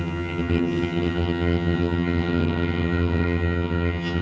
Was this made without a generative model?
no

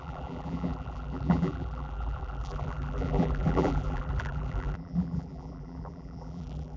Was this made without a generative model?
no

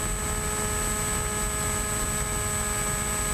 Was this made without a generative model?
yes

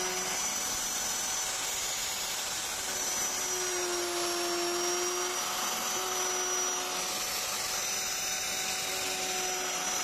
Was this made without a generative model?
yes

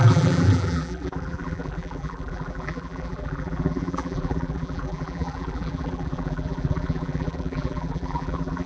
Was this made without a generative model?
no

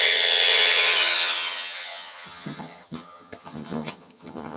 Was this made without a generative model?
no